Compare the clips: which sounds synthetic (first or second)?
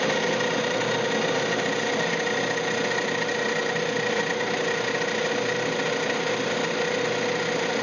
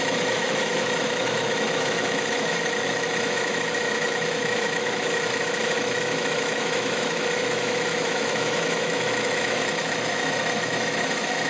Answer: second